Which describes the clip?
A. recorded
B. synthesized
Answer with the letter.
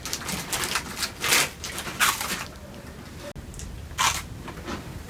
A